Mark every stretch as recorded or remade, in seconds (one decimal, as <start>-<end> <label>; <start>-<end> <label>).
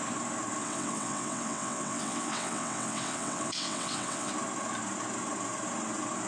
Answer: 0.0-0.6 recorded; 0.6-4.3 remade; 4.3-6.3 recorded